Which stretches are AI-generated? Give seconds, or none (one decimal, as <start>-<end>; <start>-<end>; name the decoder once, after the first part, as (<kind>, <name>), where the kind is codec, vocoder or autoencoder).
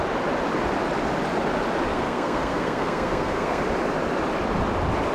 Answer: 1.9-3.6 (codec, SNAC)